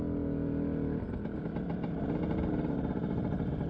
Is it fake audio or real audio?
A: real